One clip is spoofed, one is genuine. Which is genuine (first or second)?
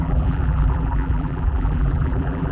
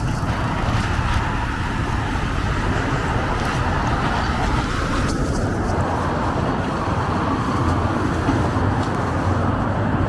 second